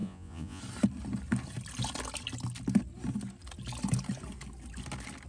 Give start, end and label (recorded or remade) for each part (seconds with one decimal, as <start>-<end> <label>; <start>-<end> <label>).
0.0-0.6 remade; 0.6-5.3 recorded